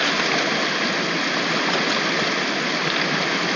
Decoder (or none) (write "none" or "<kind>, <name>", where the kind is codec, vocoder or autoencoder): none